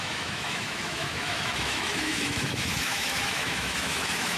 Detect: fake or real fake